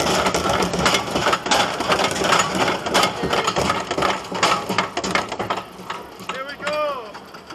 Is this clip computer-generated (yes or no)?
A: no